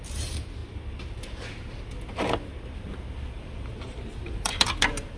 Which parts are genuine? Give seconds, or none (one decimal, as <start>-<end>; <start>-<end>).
0.6-3.4